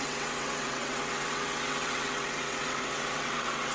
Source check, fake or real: fake